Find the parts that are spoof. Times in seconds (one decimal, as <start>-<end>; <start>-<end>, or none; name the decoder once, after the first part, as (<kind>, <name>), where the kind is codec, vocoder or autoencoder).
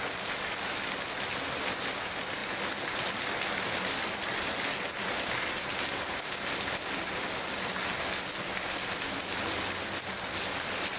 none